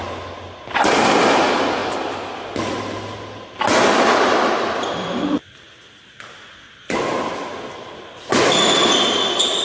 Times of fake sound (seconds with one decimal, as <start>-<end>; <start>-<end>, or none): none